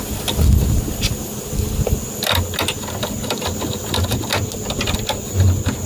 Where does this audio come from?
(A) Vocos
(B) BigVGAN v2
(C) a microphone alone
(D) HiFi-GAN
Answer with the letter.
C